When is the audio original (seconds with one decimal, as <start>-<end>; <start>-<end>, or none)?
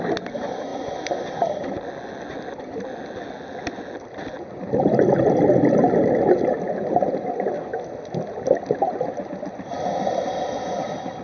0.0-11.2